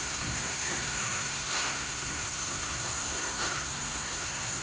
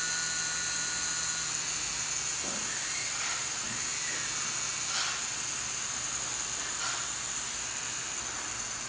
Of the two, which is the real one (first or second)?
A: second